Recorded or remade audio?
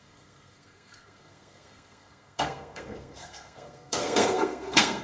remade